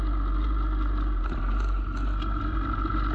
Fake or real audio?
real